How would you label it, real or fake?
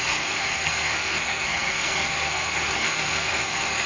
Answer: fake